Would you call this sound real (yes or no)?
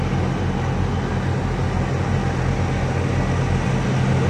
yes